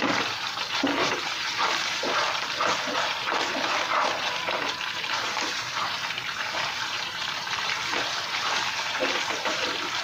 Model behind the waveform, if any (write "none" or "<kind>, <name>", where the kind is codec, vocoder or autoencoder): vocoder, BigVGAN v2